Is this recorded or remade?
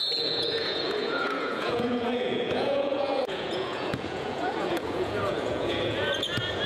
remade